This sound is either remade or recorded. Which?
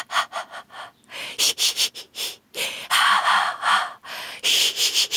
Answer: recorded